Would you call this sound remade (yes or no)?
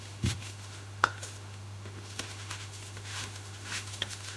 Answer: yes